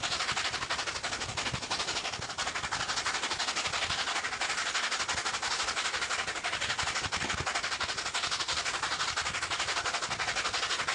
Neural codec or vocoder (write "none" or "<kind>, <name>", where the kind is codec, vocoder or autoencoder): none